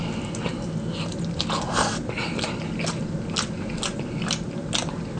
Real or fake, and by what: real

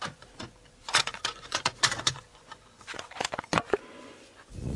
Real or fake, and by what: fake, vocoder, Vocos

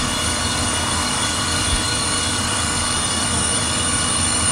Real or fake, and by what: fake, codec, DAC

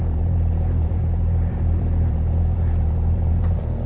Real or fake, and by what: fake, vocoder, BigVGAN v2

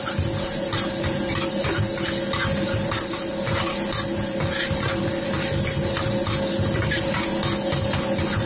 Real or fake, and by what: real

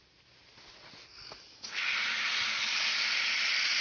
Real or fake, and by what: real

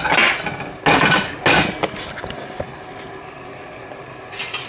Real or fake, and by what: real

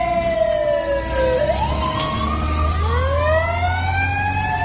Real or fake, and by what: real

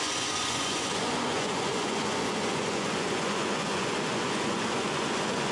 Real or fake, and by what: fake, vocoder, Vocos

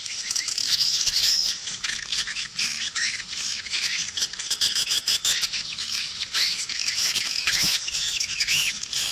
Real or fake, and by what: fake, autoencoder, DAC-VAE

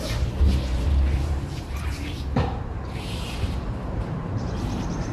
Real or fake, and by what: fake, vocoder, BigVGAN v2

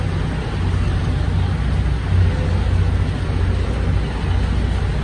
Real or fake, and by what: real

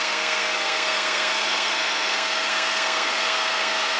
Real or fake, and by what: fake, codec, SNAC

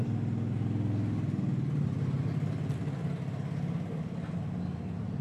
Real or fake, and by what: real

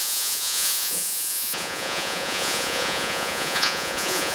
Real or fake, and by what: fake, vocoder, Vocos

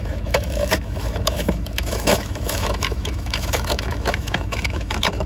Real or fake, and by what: fake, autoencoder, DAC-VAE